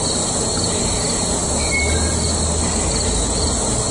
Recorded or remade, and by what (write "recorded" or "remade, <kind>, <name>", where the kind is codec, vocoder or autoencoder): recorded